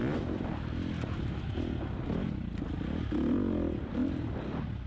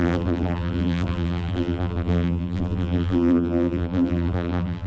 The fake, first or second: second